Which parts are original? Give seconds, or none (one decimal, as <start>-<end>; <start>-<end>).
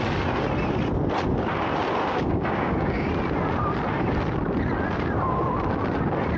0.0-2.1; 3.1-6.4